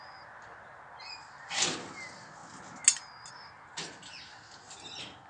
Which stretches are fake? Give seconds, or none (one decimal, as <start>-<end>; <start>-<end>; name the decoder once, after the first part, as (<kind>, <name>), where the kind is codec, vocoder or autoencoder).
none